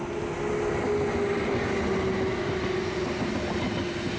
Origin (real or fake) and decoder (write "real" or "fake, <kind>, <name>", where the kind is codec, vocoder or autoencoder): real